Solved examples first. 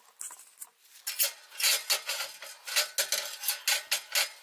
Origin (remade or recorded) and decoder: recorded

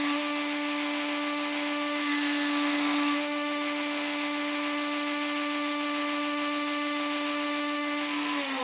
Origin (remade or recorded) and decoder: remade, autoencoder, DAC-VAE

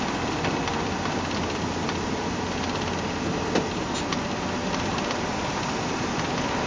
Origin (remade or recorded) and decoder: recorded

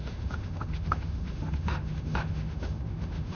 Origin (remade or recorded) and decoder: remade, autoencoder, DAC-VAE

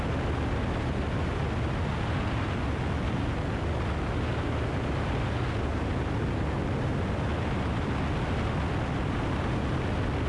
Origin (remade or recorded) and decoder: recorded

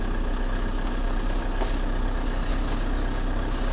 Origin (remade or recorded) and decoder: recorded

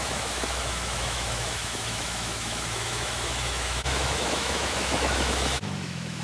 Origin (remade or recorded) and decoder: remade, autoencoder, DAC-VAE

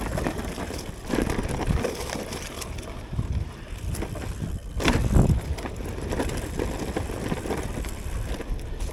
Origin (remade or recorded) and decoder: recorded